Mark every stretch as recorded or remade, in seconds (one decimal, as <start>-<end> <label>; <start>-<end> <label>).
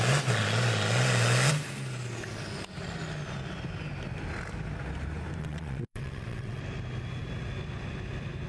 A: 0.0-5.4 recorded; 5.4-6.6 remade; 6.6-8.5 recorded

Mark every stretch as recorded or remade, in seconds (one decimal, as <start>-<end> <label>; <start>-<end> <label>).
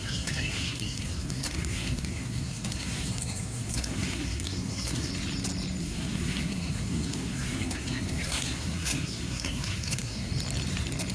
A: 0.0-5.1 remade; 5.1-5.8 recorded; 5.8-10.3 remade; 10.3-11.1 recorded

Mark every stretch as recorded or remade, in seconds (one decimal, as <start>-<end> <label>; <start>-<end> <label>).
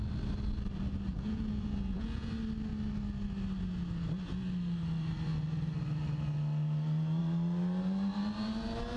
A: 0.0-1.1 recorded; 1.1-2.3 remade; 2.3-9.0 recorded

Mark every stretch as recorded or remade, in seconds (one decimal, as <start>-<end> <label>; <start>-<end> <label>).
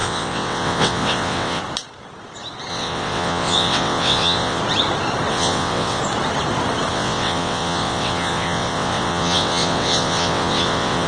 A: 0.0-1.6 remade; 1.6-2.7 recorded; 2.7-4.6 remade; 4.6-5.3 recorded; 5.3-6.0 remade; 6.0-6.9 recorded; 6.9-11.1 remade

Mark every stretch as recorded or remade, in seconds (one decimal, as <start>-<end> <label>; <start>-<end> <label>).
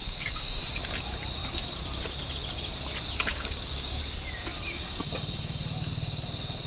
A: 0.0-0.6 remade; 0.6-3.3 recorded; 3.3-4.0 remade; 4.0-6.7 recorded